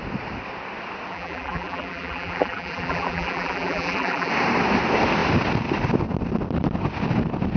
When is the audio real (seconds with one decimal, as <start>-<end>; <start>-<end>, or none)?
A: 0.0-1.1; 4.3-7.6